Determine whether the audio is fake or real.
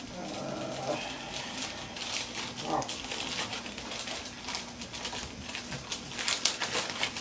real